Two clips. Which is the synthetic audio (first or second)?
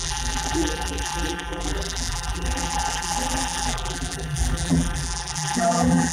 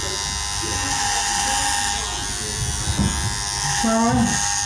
first